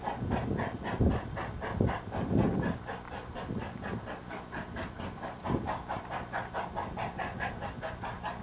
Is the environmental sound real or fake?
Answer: real